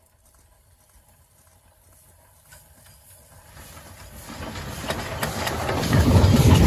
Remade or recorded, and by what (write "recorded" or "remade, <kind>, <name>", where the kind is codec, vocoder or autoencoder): remade, vocoder, BigVGAN v2